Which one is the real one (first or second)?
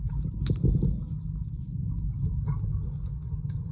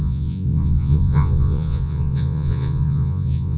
first